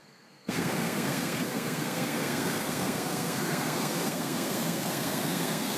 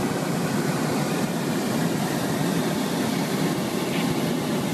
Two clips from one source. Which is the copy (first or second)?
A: first